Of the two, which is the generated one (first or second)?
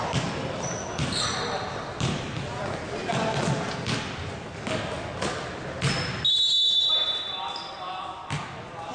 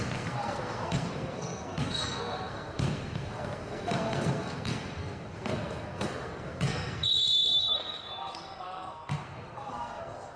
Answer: second